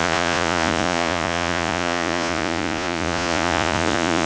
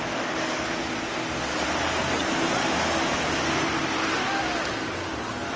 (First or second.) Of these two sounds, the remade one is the first